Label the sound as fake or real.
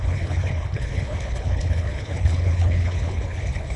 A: fake